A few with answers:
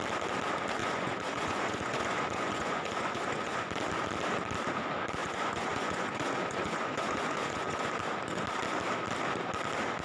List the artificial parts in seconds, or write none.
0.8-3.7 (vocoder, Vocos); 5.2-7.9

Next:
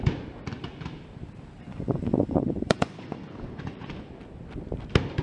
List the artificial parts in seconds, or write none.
1.7-4.1 (vocoder, Vocos)

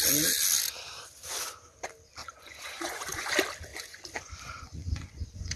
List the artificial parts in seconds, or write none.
2.2-3.3 (vocoder, Vocos); 3.7-5.6

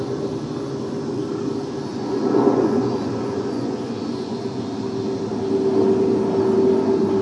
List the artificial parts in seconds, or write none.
1.9-4.4 (vocoder, Vocos)

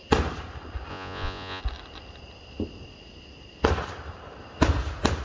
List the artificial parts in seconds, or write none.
0.9-1.6 (vocoder, Vocos)

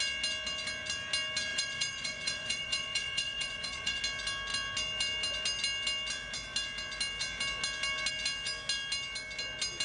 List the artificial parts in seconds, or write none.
1.5-4.0 (vocoder, Vocos)

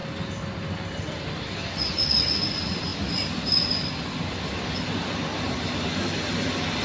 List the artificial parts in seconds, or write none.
none